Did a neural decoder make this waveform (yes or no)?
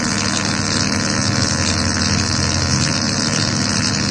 no